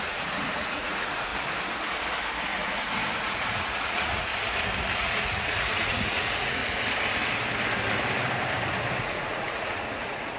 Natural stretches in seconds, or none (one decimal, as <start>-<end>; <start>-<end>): 1.3-3.2; 4.3-4.9; 6.6-9.0